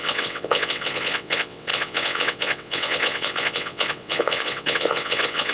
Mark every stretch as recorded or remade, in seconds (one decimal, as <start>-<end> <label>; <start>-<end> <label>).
0.0-5.5 remade

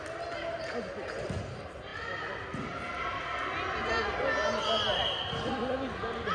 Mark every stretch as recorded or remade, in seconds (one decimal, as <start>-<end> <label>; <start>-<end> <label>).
0.0-6.3 recorded

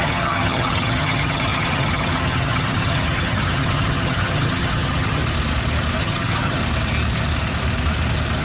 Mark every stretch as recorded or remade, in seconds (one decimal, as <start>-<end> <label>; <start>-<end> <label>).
0.0-5.2 remade; 5.2-6.0 recorded; 6.0-6.6 remade; 6.6-8.4 recorded

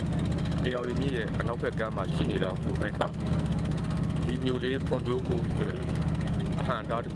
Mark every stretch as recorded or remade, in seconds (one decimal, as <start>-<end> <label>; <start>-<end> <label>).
0.0-0.4 recorded; 0.4-1.0 remade; 1.0-2.1 recorded; 2.1-6.4 remade; 6.4-7.2 recorded